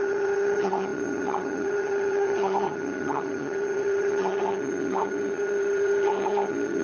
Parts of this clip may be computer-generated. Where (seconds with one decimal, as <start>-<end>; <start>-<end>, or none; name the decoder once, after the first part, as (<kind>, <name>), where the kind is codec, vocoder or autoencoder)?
0.0-6.8 (vocoder, HiFi-GAN)